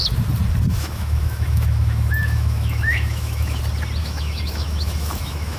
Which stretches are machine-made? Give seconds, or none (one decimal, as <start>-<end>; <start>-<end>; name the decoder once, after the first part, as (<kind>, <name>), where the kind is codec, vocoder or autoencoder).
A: 0.7-3.6 (autoencoder, DAC-VAE); 4.0-5.6